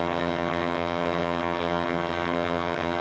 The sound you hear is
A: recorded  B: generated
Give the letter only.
B